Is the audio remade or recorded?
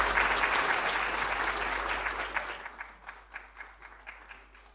recorded